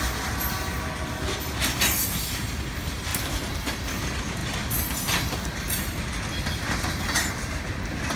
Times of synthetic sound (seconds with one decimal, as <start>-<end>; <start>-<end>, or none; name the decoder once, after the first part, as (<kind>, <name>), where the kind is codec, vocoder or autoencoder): 3.1-3.8 (vocoder, BigVGAN v2)